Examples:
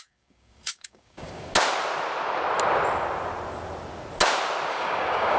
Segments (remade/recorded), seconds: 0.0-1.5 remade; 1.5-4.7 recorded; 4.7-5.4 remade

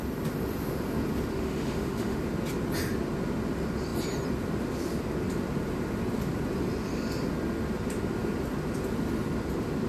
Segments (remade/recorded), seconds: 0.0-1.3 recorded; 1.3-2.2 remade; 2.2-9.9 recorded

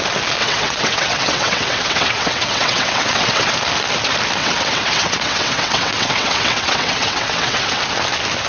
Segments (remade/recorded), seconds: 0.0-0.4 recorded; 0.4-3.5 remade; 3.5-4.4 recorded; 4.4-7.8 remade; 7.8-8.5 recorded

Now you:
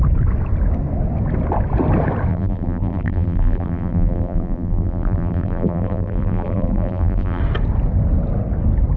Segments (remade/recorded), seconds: 0.0-2.3 recorded; 2.3-7.4 remade; 7.4-9.0 recorded

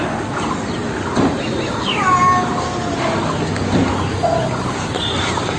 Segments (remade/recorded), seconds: 0.0-5.6 recorded

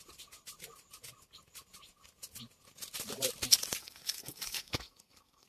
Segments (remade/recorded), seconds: 0.0-3.8 recorded; 3.8-5.5 remade